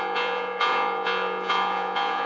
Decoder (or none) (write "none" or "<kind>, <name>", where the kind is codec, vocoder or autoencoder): vocoder, Vocos